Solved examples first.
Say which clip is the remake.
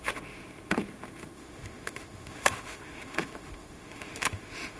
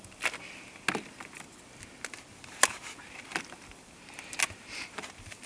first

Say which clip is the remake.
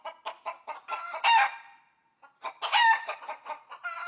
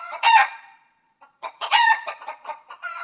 second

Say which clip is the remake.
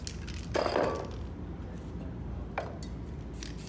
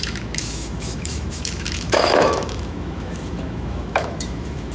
second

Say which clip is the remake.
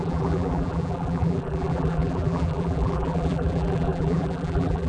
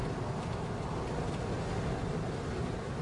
first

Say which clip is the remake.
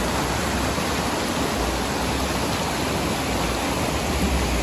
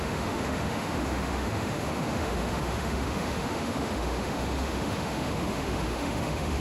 second